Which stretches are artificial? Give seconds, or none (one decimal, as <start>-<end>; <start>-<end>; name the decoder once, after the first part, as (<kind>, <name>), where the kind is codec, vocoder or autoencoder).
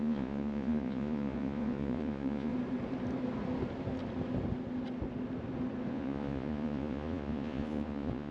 0.0-2.5 (vocoder, Vocos); 5.9-8.3